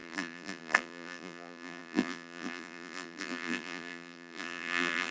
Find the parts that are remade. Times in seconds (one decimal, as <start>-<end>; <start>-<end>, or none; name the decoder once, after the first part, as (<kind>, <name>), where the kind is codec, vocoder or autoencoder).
0.0-5.1 (vocoder, BigVGAN v2)